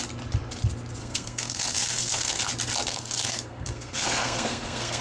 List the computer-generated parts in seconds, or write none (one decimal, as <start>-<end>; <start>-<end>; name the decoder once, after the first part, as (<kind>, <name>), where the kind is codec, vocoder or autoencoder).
1.0-2.5 (codec, SNAC); 2.9-5.0